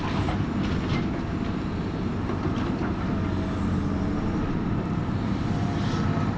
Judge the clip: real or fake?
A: real